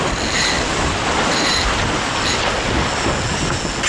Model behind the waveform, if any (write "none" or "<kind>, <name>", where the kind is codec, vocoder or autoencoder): none